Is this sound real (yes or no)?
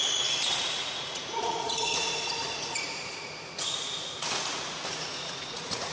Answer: no